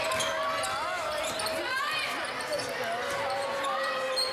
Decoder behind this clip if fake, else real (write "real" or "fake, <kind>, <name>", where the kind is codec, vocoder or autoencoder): real